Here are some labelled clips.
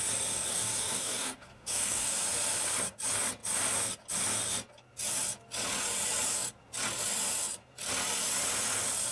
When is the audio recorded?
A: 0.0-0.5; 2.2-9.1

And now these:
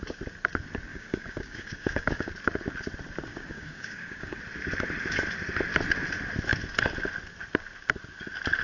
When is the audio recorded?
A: 0.0-0.9; 2.3-3.3; 4.4-8.6

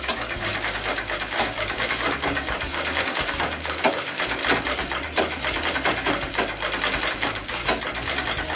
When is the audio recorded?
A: 4.4-7.1; 7.6-8.6

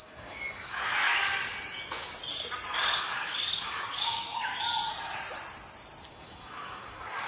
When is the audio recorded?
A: 1.3-3.0; 4.5-6.1

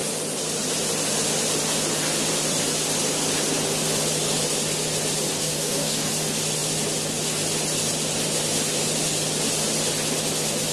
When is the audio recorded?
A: 0.0-5.3; 6.1-10.7

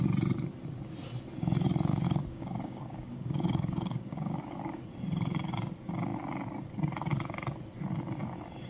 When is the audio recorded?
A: 0.0-1.9; 4.8-8.7